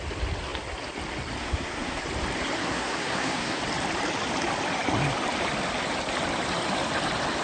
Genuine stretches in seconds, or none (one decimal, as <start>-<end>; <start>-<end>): 0.0-1.4; 2.0-2.6; 3.6-7.4